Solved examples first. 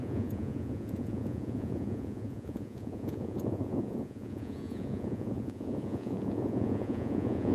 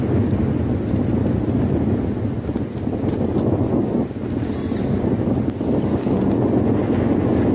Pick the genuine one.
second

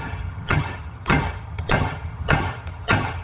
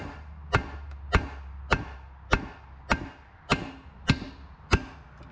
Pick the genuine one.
second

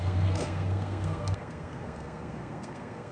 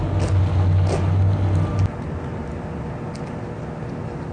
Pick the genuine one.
second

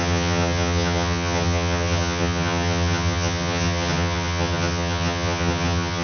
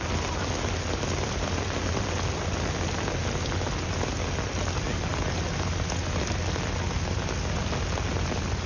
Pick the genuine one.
second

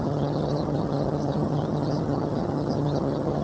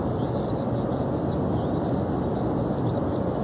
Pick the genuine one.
second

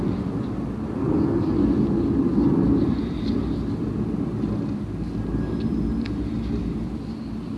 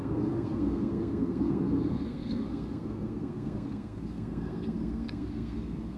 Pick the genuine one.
first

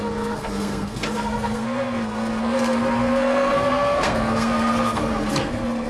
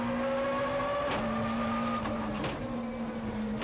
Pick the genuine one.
second